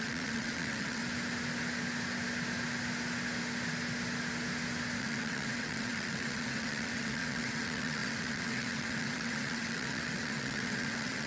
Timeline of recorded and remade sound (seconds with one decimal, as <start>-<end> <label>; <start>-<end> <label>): 0.0-1.0 remade; 1.0-5.0 recorded; 5.0-11.3 remade